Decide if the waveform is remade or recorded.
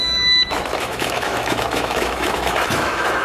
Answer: remade